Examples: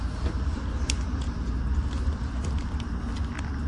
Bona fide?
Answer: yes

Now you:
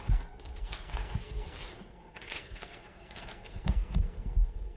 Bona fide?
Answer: no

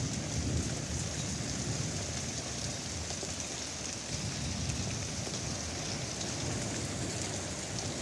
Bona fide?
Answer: yes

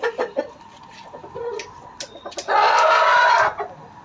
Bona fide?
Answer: yes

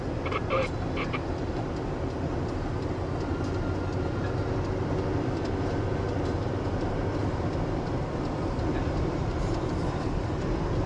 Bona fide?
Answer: yes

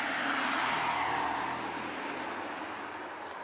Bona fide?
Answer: yes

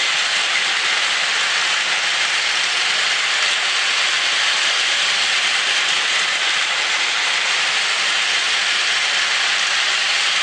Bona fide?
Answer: yes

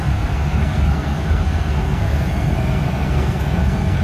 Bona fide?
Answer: no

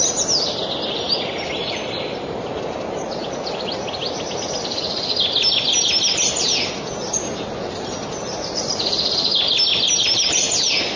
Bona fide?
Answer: yes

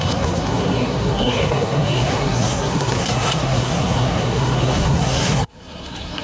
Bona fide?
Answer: no